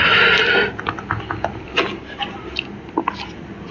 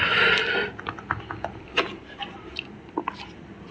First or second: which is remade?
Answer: second